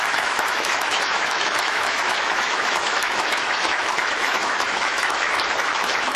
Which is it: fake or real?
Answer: fake